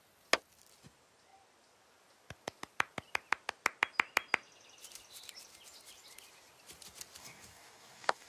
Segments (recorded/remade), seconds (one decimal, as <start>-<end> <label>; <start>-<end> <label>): 0.0-7.2 recorded; 7.2-8.3 remade